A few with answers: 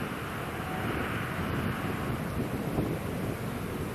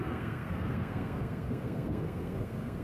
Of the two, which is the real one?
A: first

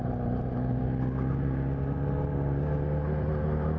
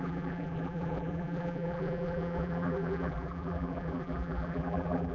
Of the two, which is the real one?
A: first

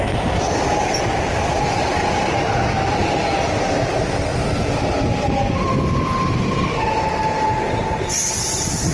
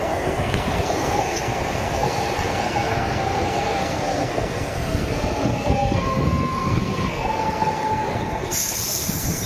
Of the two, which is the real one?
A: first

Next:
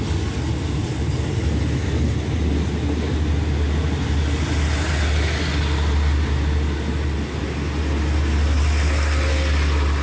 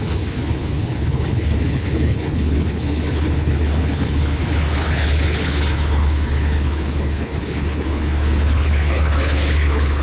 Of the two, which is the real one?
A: first